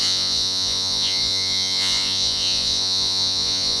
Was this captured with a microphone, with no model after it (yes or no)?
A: no